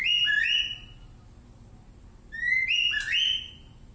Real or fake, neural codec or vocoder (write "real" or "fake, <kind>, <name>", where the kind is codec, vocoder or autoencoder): real